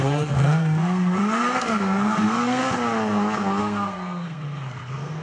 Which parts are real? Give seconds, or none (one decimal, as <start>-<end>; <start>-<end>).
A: 2.6-3.6